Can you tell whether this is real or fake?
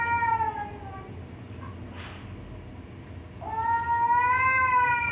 real